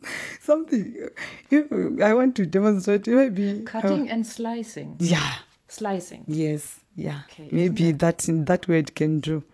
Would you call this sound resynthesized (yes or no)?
yes